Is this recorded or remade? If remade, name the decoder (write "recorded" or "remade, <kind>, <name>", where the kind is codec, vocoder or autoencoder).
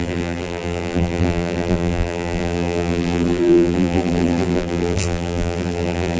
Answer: remade, vocoder, BigVGAN v2